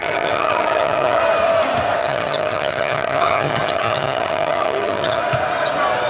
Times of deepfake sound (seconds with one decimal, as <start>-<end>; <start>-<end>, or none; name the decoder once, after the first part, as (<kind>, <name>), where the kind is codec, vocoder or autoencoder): 0.0-1.2 (vocoder, HiFi-GAN); 2.0-5.2